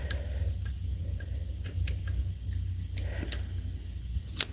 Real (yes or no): yes